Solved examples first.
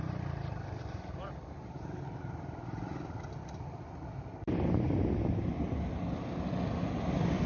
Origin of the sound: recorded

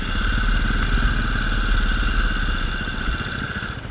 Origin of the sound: recorded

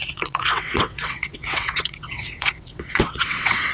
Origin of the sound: remade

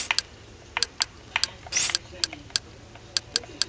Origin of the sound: recorded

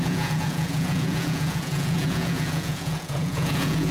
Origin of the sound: remade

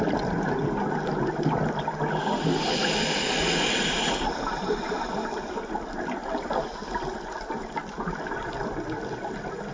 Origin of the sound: recorded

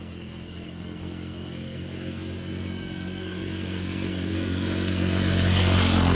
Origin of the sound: remade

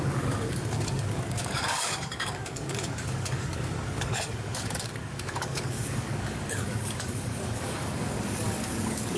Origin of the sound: remade